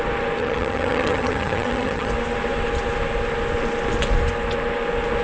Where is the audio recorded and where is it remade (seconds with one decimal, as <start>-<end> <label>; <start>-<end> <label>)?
0.0-0.4 recorded; 0.4-2.1 remade; 2.1-5.2 recorded